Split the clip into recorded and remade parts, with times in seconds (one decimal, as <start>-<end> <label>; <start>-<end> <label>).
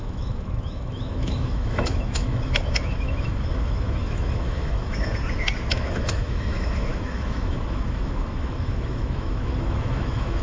0.0-5.1 remade; 5.1-5.7 recorded; 5.7-10.4 remade